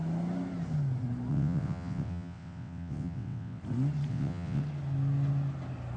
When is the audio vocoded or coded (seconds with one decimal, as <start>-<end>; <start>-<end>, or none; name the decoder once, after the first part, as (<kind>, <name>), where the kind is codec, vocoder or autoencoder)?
1.3-3.6 (vocoder, WaveNeXt); 4.1-4.6